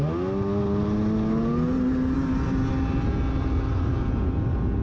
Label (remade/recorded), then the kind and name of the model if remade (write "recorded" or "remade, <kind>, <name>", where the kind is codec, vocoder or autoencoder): recorded